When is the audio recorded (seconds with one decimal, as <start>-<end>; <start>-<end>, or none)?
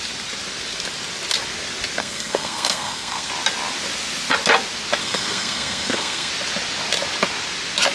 0.0-2.0; 3.3-5.0; 6.3-7.9